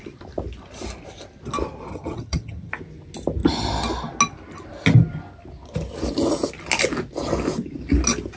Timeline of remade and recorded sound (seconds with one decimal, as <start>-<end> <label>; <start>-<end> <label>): 0.0-1.9 recorded; 1.9-2.7 remade; 2.7-8.4 recorded

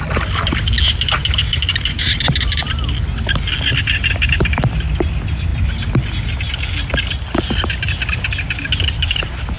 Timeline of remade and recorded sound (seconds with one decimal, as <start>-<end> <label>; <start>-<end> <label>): 0.0-9.6 recorded